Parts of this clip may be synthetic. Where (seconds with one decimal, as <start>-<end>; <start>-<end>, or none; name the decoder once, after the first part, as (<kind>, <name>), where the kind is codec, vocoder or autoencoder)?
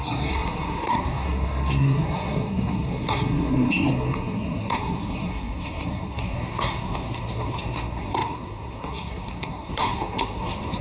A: 0.0-10.8 (codec, SNAC)